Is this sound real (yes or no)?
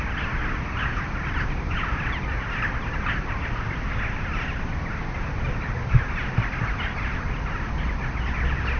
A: yes